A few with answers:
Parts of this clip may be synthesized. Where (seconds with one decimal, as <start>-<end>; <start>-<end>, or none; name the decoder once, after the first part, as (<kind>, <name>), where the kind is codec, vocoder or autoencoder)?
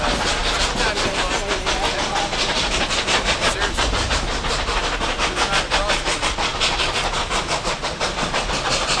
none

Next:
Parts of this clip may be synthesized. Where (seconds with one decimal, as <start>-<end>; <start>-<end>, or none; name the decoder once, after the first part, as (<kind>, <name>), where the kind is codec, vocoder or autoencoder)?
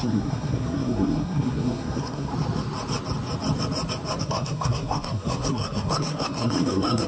0.0-2.3 (codec, SNAC); 4.2-7.1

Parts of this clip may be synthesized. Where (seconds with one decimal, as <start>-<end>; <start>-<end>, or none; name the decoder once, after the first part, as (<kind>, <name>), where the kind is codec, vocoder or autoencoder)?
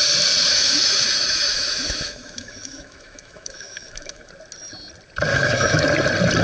0.5-4.3 (autoencoder, DAC-VAE); 5.3-5.8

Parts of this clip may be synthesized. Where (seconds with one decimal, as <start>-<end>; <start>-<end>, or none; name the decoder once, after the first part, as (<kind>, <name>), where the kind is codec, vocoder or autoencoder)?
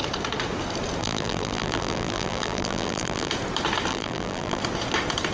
1.0-3.3 (vocoder, BigVGAN v2); 3.9-4.6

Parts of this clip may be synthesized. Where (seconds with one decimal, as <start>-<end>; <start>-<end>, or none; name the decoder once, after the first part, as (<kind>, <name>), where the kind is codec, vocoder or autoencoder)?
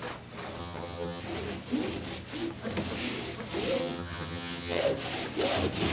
0.6-1.2 (vocoder, HiFi-GAN); 3.8-4.8